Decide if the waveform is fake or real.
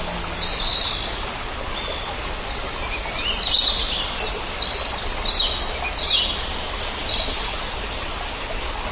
real